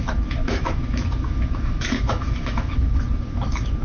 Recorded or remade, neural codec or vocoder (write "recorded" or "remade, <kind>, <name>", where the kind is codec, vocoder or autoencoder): remade, autoencoder, DAC-VAE